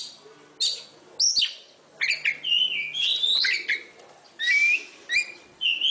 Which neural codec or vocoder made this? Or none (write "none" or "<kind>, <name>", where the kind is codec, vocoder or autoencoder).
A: none